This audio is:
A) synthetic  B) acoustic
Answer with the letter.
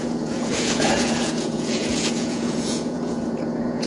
A